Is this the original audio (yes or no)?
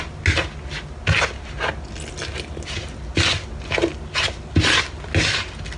yes